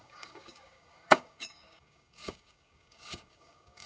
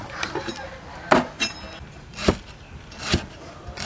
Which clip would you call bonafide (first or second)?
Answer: second